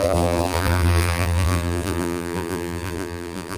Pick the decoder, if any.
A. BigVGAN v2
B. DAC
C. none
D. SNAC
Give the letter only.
A